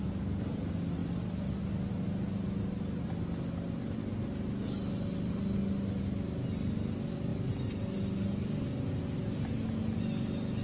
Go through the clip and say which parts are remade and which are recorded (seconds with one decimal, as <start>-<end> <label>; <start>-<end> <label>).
0.0-10.6 recorded